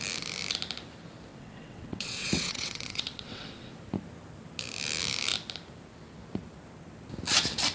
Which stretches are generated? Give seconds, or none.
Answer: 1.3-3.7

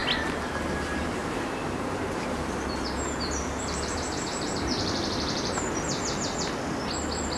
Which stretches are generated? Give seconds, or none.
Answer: 1.2-5.6

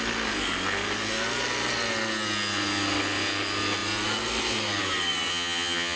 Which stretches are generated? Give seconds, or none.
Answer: 5.3-6.0

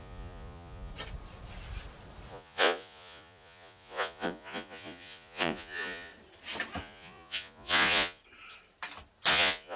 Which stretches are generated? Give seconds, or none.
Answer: 0.0-0.9; 2.3-6.1; 6.8-8.2; 9.3-9.8

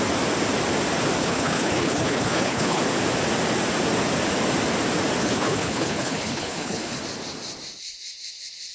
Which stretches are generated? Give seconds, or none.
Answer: 1.2-2.8; 5.2-7.0